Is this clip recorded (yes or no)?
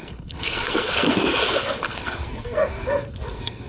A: no